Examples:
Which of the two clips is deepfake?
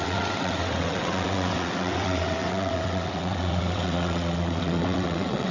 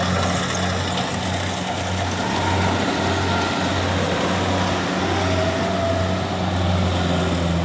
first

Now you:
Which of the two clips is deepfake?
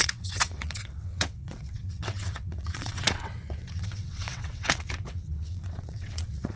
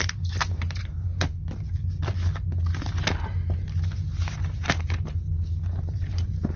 first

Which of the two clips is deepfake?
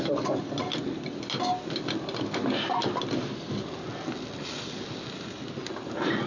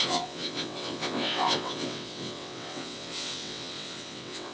second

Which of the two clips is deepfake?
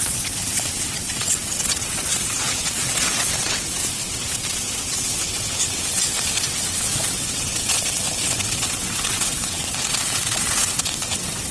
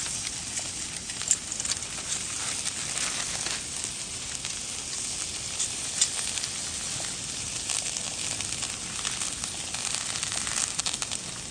first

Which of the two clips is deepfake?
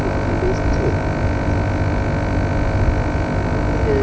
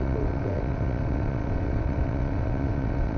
second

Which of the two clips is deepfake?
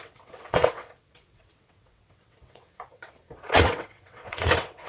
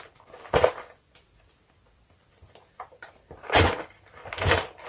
first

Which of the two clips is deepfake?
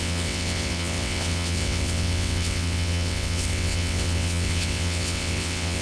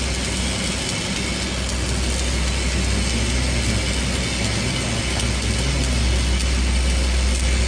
first